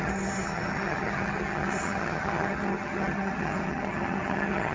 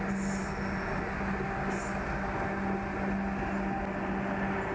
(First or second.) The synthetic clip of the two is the first